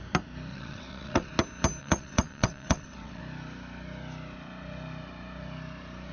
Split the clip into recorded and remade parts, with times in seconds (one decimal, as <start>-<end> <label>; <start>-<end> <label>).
0.0-0.5 recorded; 0.5-1.3 remade; 1.3-1.8 recorded; 1.8-3.2 remade; 3.2-6.1 recorded